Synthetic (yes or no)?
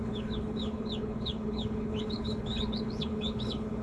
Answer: yes